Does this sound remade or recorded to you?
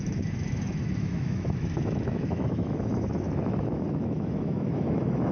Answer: remade